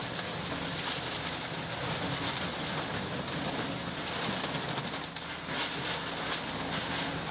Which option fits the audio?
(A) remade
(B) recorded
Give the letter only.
B